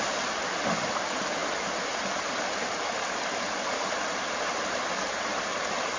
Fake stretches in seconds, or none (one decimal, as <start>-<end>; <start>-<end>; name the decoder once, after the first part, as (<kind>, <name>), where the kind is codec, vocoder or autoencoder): 1.4-4.8 (vocoder, BigVGAN v2)

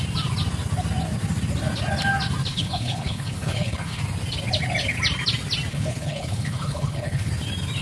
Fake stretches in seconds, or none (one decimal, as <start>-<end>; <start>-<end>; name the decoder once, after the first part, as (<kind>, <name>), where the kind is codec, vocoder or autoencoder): 2.5-4.0 (codec, HILCodec); 5.7-7.3

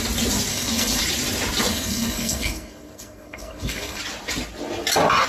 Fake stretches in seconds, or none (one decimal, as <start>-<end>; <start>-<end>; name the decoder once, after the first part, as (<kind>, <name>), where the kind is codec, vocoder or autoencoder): 0.5-1.0 (codec, SNAC); 1.7-4.0